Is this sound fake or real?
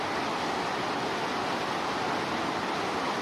real